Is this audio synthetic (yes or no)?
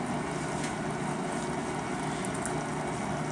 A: no